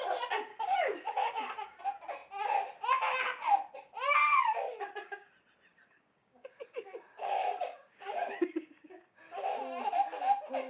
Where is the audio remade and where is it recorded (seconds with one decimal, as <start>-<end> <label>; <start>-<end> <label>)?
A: 0.0-0.5 recorded; 0.5-1.8 remade; 1.8-4.2 recorded; 4.2-5.3 remade; 5.3-5.7 recorded; 5.7-9.6 remade; 9.6-10.7 recorded